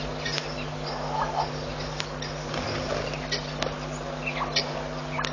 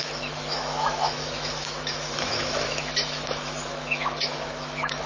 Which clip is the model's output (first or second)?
second